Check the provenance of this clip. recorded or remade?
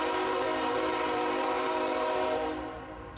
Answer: remade